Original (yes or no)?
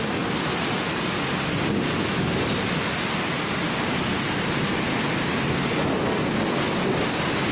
yes